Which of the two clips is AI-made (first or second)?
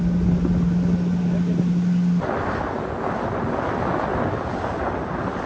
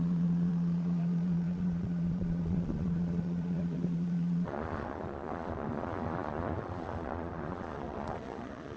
second